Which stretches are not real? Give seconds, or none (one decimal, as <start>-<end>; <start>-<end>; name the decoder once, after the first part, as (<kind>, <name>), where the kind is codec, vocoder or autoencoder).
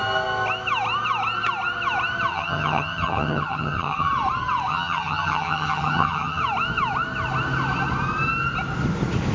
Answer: 2.3-4.1 (vocoder, HiFi-GAN); 4.7-6.4